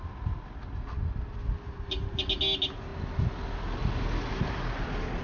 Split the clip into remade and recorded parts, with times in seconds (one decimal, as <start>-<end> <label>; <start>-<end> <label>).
0.0-5.2 recorded